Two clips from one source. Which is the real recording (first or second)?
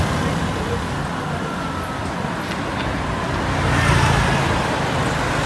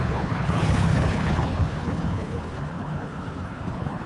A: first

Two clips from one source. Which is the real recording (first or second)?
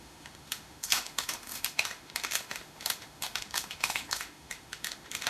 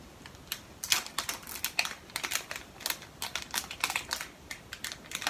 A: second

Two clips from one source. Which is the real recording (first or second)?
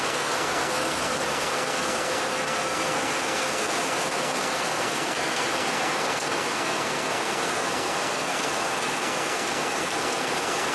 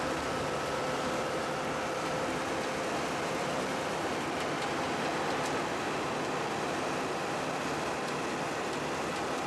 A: second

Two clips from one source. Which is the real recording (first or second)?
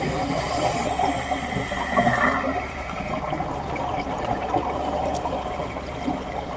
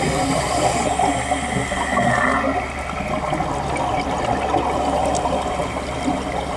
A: second